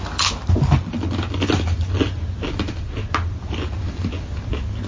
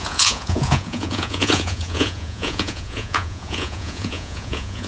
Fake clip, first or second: second